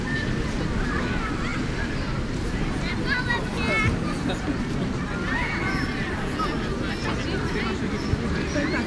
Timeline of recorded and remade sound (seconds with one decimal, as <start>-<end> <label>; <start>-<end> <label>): 0.0-8.9 recorded